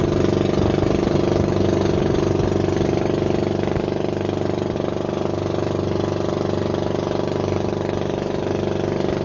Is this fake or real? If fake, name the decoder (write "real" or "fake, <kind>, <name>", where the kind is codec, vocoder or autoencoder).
real